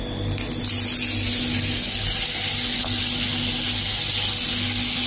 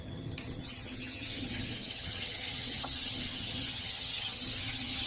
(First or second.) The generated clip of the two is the second